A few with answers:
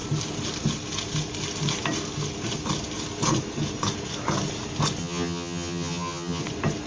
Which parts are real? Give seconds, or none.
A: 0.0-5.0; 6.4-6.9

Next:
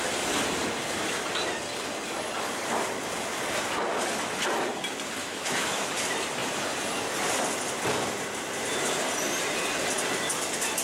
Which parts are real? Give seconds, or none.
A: 0.0-5.2; 5.9-10.8

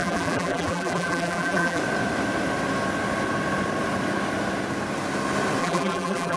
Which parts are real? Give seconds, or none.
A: 1.8-5.6